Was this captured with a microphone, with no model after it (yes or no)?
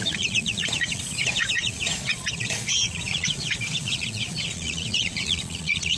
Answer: no